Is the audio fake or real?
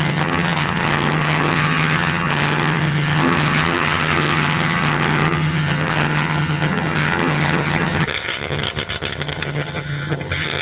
fake